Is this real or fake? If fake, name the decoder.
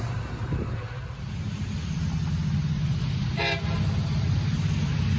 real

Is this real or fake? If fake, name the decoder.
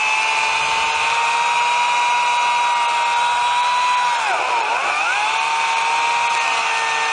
real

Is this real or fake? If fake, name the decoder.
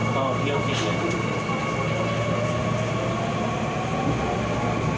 real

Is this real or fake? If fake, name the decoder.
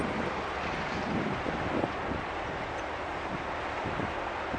real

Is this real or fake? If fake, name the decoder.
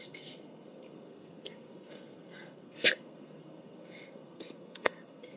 fake, codec, SNAC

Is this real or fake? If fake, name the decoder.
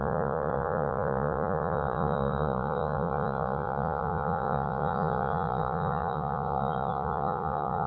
fake, vocoder, Vocos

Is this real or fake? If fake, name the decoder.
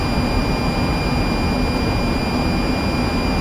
real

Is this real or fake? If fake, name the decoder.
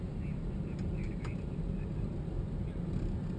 fake, vocoder, BigVGAN v2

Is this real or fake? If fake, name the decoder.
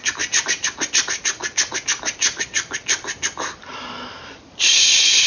real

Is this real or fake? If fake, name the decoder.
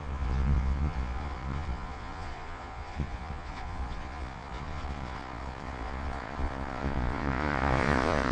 fake, vocoder, Vocos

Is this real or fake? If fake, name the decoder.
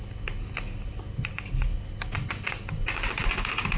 real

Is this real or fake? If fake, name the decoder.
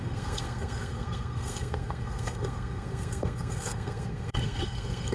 fake, codec, SNAC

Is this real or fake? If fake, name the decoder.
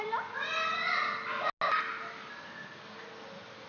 real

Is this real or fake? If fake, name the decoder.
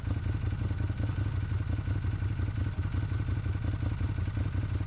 real